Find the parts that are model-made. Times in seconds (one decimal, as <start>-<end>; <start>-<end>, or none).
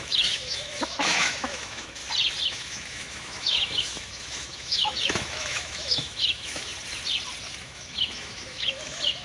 0.0-2.0; 2.5-6.7; 7.6-9.2